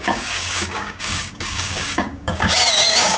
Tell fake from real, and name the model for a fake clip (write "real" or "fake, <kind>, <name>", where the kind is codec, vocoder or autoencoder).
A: fake, codec, DAC